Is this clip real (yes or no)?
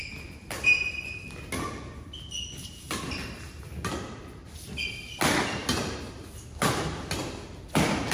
yes